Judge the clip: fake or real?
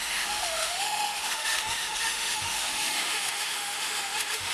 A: fake